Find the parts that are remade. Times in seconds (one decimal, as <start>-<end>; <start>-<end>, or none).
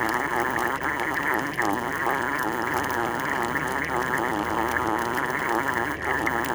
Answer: none